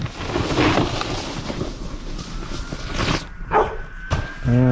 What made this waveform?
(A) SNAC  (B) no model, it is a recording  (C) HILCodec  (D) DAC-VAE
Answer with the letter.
B